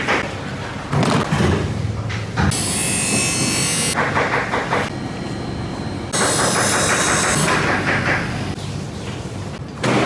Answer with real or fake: real